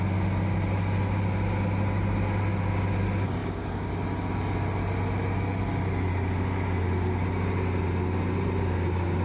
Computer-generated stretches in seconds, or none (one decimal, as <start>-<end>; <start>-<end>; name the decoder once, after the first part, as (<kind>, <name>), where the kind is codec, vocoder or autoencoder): 3.4-3.9 (codec, DAC)